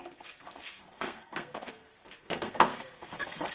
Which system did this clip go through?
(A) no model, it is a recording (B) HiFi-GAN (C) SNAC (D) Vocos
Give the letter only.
C